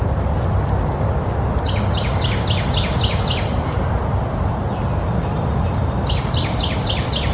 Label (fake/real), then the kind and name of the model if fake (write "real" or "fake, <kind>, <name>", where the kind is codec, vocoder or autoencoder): real